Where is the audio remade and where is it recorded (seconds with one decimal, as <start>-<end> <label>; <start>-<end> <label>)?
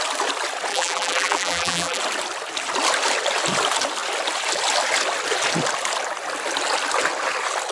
0.0-0.7 recorded; 0.7-2.0 remade; 2.0-7.7 recorded